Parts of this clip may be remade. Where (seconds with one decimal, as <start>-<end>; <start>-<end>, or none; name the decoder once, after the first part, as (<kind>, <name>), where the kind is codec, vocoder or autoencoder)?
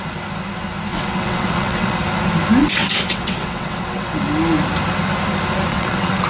0.9-2.0 (vocoder, WaveNeXt); 2.6-4.2; 5.7-6.3